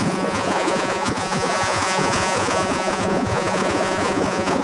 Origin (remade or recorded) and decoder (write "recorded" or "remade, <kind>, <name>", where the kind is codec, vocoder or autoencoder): remade, vocoder, Vocos